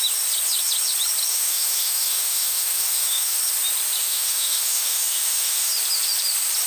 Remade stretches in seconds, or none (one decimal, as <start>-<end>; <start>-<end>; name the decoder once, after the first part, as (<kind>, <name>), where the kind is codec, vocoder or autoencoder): 1.3-3.4 (autoencoder, DAC-VAE); 4.0-5.7